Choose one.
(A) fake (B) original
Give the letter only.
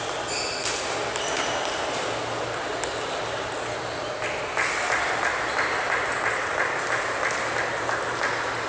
B